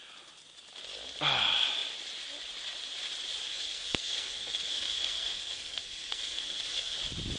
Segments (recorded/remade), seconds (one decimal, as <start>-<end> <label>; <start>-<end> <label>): 0.0-3.5 recorded; 3.5-7.0 remade; 7.0-7.4 recorded